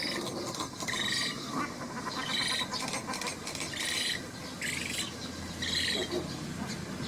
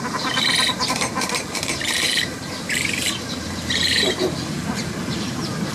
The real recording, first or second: first